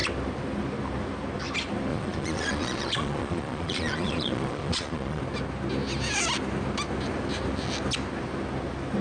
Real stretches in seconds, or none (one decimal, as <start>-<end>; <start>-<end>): 0.0-1.9; 5.2-9.0